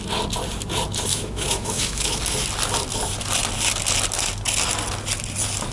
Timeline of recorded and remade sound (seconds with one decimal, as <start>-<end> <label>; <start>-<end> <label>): 0.0-1.1 recorded; 1.1-2.2 remade; 2.2-5.7 recorded